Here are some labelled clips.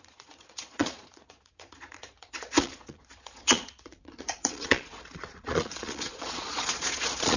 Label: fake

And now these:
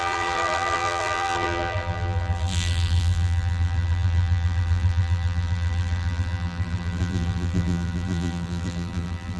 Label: fake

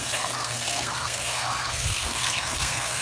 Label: fake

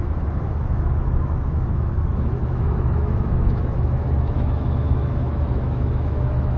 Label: fake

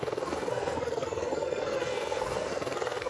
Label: fake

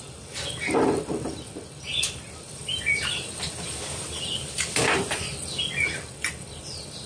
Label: real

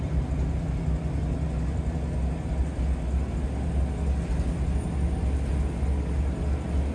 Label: real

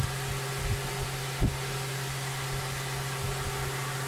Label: real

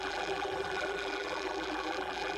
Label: fake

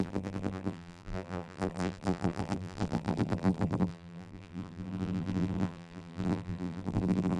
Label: fake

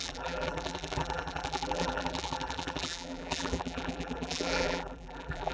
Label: fake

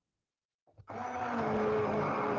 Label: real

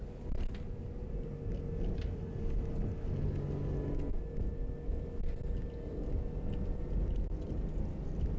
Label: real